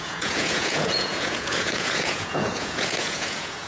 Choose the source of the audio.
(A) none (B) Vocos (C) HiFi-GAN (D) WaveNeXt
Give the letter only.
B